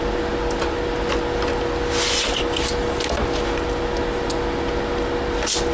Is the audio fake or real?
real